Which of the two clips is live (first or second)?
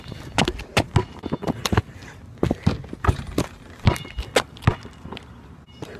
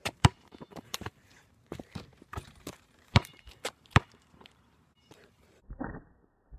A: first